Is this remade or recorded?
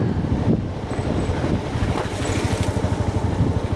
remade